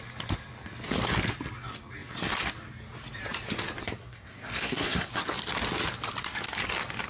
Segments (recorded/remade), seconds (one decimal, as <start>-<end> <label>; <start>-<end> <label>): 0.0-4.0 recorded; 4.0-5.1 remade; 5.1-7.1 recorded